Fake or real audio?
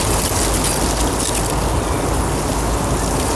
real